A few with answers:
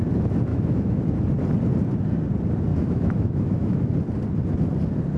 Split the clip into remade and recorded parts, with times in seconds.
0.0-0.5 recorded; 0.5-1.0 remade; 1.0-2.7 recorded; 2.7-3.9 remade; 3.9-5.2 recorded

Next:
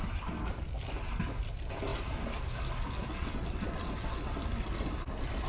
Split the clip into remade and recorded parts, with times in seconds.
0.0-5.5 recorded

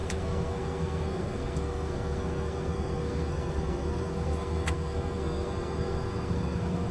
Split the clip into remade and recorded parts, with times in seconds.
0.0-6.9 remade

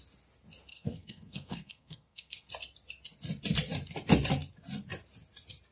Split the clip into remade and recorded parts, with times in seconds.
0.0-0.7 recorded; 0.7-2.5 remade; 2.5-5.7 recorded

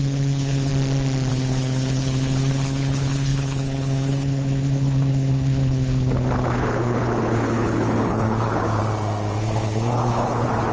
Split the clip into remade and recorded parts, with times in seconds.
0.0-0.7 remade; 0.7-1.3 recorded; 1.3-8.8 remade; 8.8-9.4 recorded; 9.4-10.7 remade

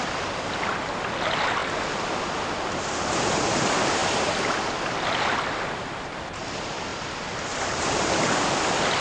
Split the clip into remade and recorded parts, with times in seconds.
0.0-9.0 recorded